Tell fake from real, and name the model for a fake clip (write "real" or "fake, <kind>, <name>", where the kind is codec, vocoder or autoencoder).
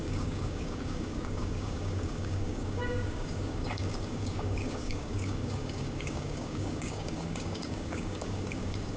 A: fake, codec, DAC